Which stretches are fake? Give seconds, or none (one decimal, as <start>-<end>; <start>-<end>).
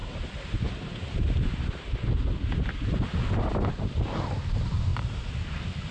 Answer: 0.0-1.9; 4.9-5.9